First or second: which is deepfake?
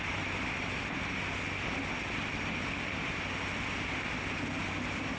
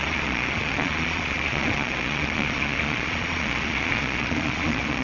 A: second